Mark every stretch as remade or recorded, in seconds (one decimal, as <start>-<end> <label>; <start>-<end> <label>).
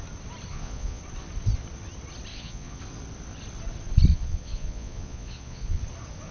0.0-0.5 recorded; 0.5-1.0 remade; 1.0-2.3 recorded; 2.3-2.8 remade; 2.8-4.1 recorded; 4.1-5.8 remade; 5.8-6.3 recorded